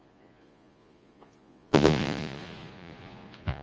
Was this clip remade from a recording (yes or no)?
yes